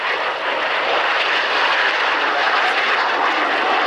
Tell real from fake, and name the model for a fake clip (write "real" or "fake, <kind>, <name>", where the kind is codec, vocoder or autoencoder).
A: real